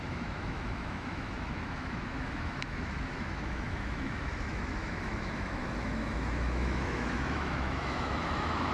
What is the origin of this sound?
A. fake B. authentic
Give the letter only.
A